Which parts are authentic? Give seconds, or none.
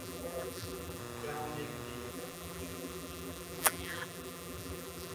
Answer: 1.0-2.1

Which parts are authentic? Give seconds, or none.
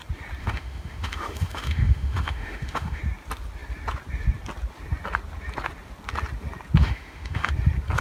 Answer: 0.0-0.4; 3.0-6.8; 7.5-8.0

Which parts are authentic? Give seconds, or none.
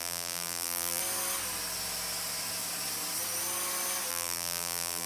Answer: 1.0-4.1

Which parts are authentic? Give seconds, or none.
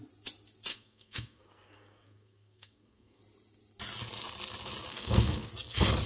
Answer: 0.0-0.7; 3.2-4.9; 5.5-6.1